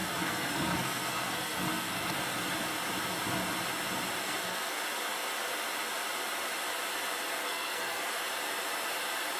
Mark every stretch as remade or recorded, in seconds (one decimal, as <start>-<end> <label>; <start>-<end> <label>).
0.0-2.2 remade; 2.2-4.2 recorded; 4.2-4.8 remade; 4.8-7.4 recorded; 7.4-8.2 remade; 8.2-9.4 recorded